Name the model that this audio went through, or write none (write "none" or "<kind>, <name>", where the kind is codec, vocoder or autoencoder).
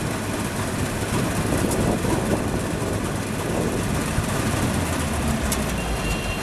none